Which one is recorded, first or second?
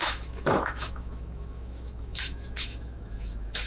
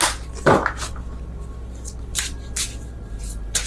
second